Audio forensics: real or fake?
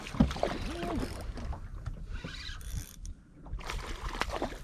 real